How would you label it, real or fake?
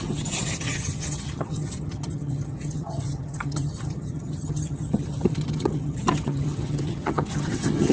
fake